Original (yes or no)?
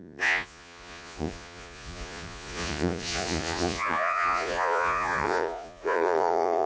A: no